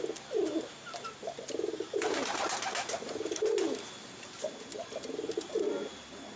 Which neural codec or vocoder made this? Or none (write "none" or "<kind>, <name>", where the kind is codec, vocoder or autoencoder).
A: none